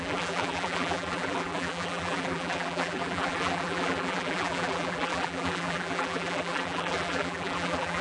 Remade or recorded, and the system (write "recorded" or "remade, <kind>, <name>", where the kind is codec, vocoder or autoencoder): remade, vocoder, BigVGAN v2